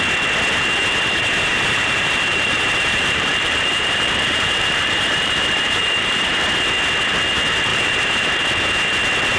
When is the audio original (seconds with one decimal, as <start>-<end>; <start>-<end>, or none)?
0.0-1.5; 6.3-7.7; 8.3-9.4